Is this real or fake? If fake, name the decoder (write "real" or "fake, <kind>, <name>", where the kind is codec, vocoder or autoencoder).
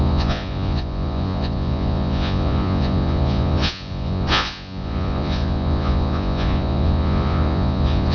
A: fake, vocoder, Vocos